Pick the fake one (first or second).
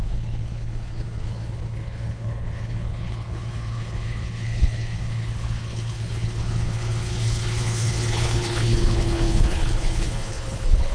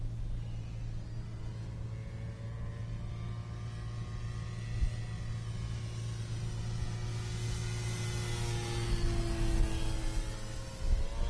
first